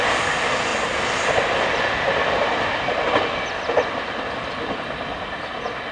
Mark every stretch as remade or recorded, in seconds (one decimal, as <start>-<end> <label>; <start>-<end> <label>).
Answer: 0.0-5.9 recorded

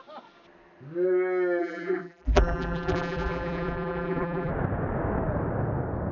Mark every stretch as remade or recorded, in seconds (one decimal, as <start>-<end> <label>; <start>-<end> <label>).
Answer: 0.0-1.6 recorded; 1.6-4.5 remade; 4.5-6.1 recorded

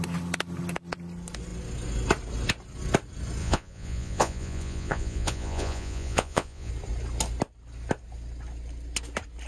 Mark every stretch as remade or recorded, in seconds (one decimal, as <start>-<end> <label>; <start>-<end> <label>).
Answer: 0.0-3.4 recorded; 3.4-6.7 remade; 6.7-9.5 recorded